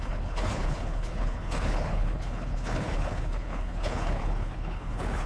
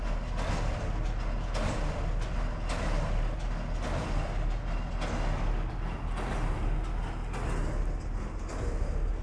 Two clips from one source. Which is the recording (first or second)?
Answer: second